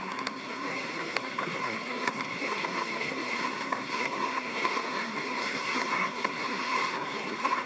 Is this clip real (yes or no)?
no